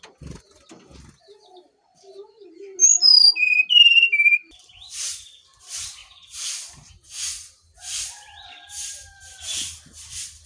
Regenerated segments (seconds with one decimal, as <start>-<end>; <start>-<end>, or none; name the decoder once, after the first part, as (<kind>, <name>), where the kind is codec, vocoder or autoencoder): 6.0-9.4 (vocoder, BigVGAN v2)